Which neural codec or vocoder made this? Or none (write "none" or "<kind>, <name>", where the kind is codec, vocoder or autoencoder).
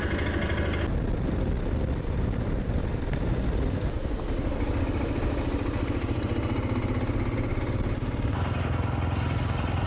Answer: none